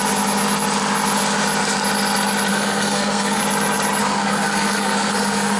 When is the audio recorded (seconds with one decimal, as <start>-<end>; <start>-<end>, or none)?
0.0-2.5; 3.4-4.0